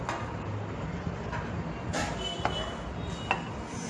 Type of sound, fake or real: real